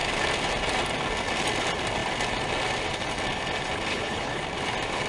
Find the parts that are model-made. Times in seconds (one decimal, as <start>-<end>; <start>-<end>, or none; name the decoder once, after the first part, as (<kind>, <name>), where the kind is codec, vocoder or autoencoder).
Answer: 3.9-4.4 (codec, HILCodec)